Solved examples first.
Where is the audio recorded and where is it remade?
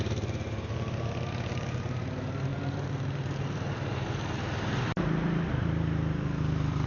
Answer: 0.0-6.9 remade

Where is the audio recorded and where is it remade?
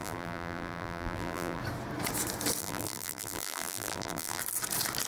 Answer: 0.0-1.6 remade; 1.6-2.6 recorded; 2.6-4.4 remade; 4.4-5.1 recorded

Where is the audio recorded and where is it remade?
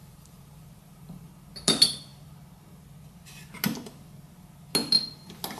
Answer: 0.0-1.3 remade; 1.3-5.6 recorded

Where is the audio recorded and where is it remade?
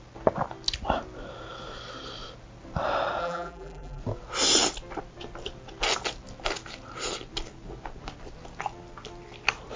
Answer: 0.0-3.2 recorded; 3.2-4.0 remade; 4.0-9.8 recorded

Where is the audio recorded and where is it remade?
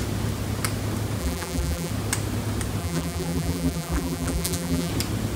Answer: 0.0-1.2 recorded; 1.2-1.9 remade; 1.9-2.8 recorded; 2.8-4.9 remade; 4.9-5.4 recorded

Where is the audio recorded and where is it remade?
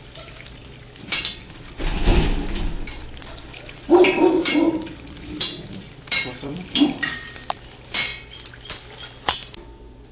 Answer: 0.0-2.1 remade; 2.1-3.9 recorded; 3.9-8.1 remade; 8.1-10.1 recorded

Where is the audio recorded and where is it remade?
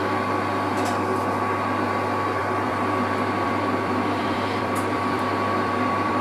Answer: 0.0-2.4 recorded; 2.4-6.2 remade